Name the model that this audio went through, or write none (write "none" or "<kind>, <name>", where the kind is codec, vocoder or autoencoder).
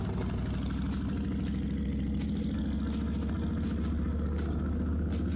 none